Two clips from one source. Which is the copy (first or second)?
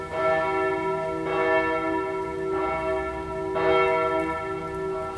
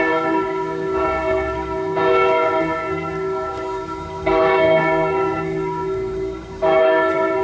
second